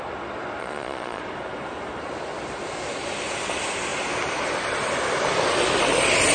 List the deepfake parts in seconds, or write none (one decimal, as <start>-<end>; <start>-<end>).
0.6-1.2